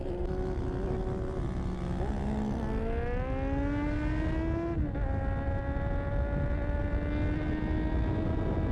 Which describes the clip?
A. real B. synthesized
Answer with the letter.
A